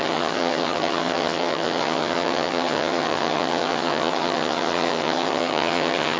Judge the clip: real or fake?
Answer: fake